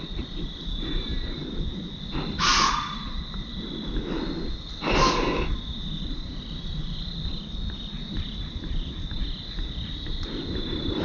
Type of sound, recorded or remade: recorded